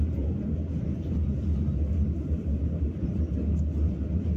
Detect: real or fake real